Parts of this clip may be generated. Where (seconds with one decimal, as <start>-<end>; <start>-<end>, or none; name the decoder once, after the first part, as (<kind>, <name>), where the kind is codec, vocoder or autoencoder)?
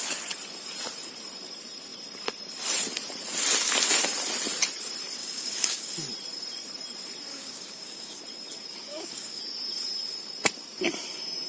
5.2-5.9 (codec, DAC); 7.3-8.2; 8.9-9.4